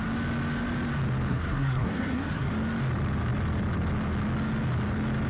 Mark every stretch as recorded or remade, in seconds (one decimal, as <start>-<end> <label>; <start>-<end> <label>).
0.0-1.3 recorded; 1.3-2.5 remade; 2.5-5.3 recorded